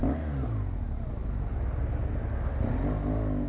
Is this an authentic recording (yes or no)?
yes